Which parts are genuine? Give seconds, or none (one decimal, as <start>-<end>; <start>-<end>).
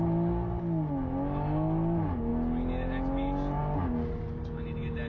0.0-5.1